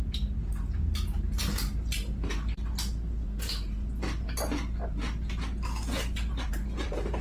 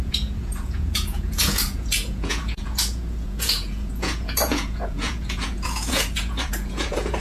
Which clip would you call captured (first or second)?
first